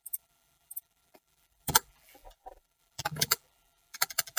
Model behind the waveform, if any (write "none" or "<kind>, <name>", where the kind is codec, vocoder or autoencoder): vocoder, BigVGAN v2